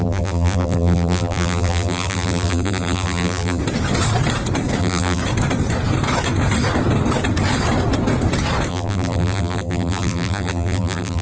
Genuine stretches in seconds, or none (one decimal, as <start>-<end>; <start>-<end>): 3.6-4.8; 5.2-8.7